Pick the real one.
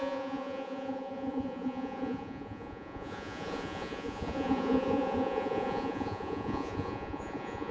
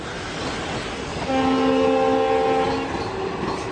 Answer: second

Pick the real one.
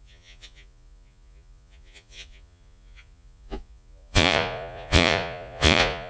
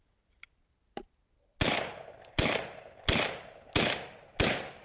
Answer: second